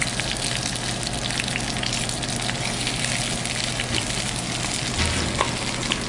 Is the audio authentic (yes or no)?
yes